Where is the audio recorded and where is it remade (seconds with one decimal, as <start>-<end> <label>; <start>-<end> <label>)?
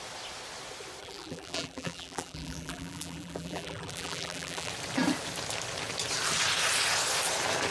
0.0-1.0 recorded; 1.0-4.7 remade; 4.7-7.7 recorded